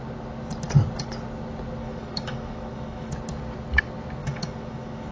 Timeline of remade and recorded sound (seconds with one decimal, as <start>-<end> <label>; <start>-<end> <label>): 0.0-1.8 recorded; 1.8-3.1 remade; 3.1-4.2 recorded; 4.2-5.1 remade